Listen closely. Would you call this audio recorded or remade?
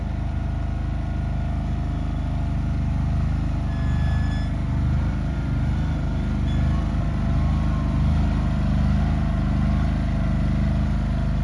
recorded